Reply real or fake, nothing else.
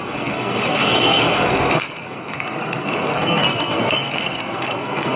fake